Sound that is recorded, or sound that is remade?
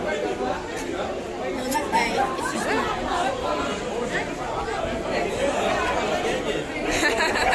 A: recorded